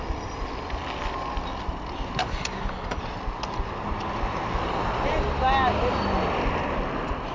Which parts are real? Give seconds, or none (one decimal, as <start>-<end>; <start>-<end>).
0.0-2.2; 3.0-7.3